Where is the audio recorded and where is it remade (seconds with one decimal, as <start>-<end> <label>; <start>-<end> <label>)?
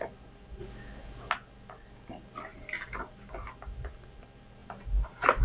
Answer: 0.0-2.5 recorded; 2.5-3.3 remade; 3.3-4.6 recorded; 4.6-5.4 remade